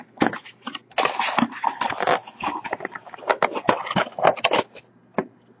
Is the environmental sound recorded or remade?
recorded